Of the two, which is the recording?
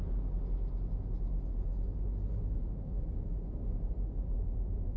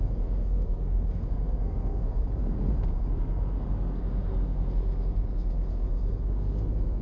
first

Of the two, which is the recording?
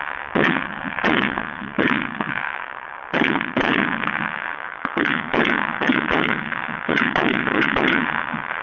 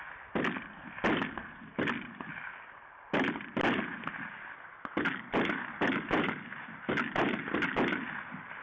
second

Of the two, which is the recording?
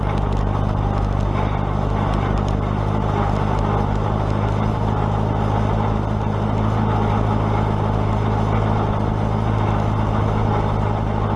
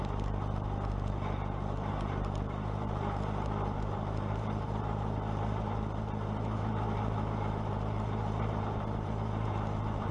first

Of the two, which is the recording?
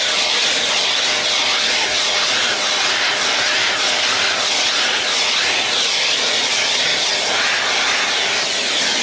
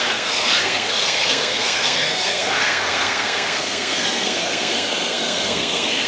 first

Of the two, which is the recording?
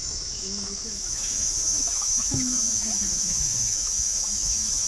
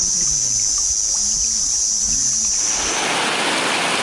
second